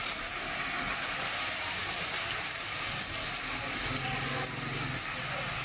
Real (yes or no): yes